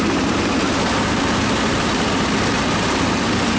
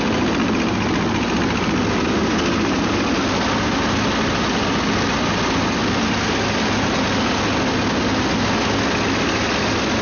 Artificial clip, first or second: first